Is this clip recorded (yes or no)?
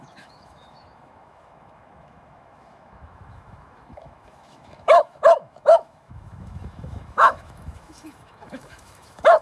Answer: no